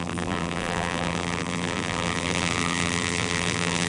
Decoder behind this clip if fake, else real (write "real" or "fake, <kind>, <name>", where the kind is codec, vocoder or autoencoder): fake, vocoder, BigVGAN v2